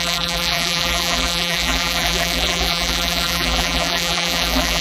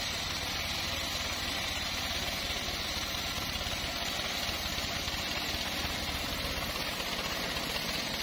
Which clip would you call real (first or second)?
second